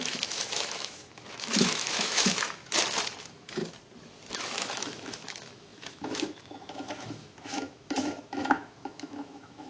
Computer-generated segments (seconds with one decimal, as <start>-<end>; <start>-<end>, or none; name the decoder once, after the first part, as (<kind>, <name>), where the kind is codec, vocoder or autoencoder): 0.0-2.6 (autoencoder, DAC-VAE); 3.2-3.6; 4.3-9.7